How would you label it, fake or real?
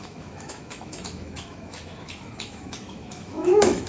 fake